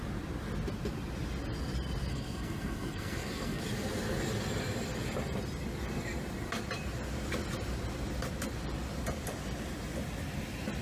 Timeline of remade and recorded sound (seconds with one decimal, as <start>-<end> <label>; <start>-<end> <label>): 0.0-2.1 recorded; 2.1-3.6 remade; 3.6-10.8 recorded